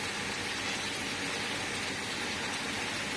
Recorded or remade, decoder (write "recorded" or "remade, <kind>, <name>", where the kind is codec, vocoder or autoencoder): recorded